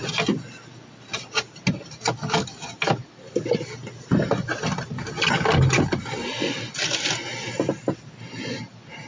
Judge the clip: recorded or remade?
recorded